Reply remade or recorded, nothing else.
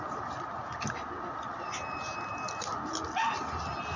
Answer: recorded